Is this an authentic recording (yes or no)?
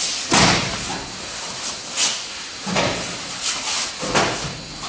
yes